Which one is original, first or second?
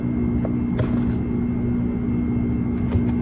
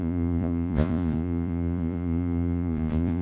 first